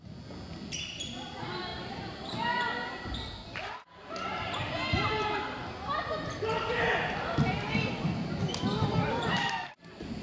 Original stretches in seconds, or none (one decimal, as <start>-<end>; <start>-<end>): 0.0-1.7; 2.3-10.2